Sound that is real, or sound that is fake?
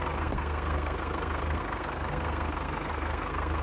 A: fake